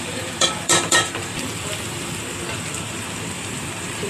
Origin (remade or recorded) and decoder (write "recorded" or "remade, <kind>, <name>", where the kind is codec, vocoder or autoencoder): remade, vocoder, BigVGAN v2